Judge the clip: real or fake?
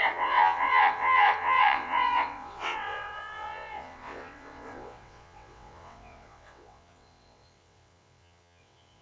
fake